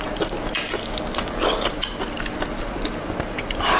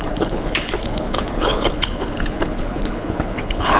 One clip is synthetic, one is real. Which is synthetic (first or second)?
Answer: second